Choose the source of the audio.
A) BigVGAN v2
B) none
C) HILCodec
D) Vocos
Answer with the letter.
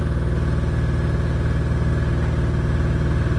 B